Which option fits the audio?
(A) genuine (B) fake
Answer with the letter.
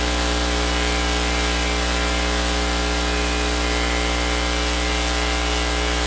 A